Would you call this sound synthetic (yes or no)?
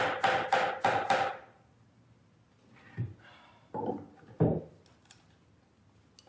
no